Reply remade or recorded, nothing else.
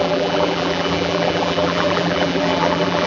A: remade